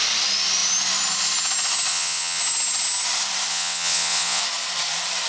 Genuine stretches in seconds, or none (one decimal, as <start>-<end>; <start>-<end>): 0.0-1.9; 2.4-3.5; 4.4-5.3